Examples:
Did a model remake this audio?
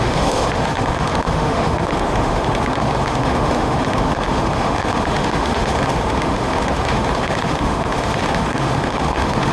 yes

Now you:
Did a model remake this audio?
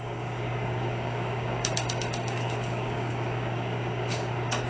yes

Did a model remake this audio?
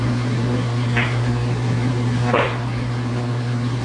yes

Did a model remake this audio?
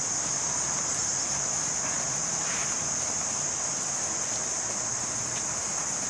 no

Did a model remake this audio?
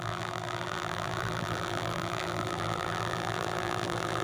yes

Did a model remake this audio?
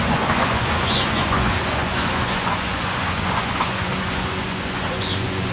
yes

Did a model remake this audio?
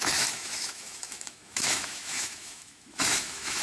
yes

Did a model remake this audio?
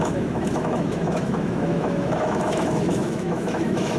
yes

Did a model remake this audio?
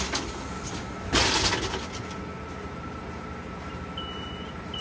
no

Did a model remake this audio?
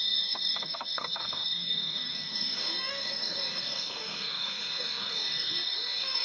yes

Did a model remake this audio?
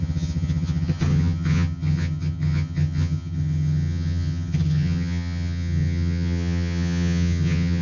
yes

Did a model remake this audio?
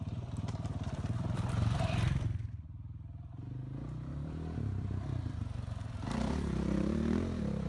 yes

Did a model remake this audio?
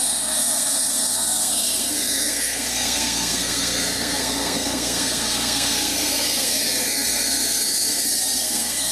yes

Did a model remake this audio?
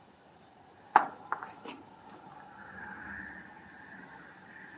no